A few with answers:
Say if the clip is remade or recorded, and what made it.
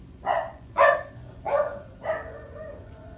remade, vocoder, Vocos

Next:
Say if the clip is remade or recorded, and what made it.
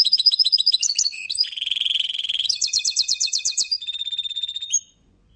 remade, vocoder, Vocos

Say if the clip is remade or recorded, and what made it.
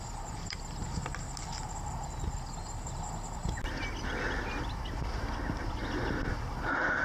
recorded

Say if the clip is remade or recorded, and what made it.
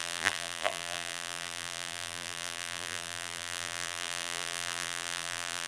remade, vocoder, BigVGAN v2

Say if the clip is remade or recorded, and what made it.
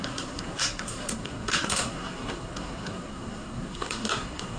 remade, codec, SNAC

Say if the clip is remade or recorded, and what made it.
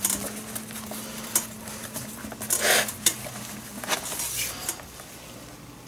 recorded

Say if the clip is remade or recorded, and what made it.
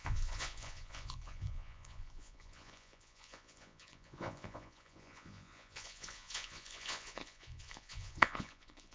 remade, vocoder, Vocos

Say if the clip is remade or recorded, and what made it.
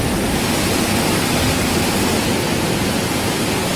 recorded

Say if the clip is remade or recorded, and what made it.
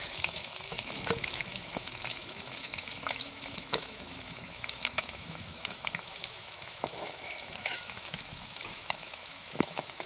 remade, autoencoder, DAC-VAE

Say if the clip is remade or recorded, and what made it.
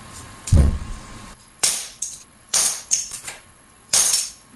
remade, vocoder, Vocos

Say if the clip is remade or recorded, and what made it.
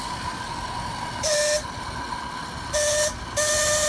recorded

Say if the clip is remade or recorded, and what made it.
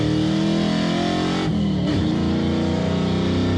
recorded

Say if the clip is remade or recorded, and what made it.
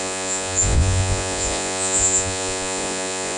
remade, vocoder, Vocos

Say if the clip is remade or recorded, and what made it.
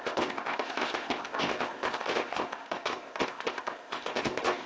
remade, codec, ZipCodec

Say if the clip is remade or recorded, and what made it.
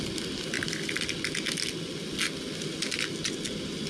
recorded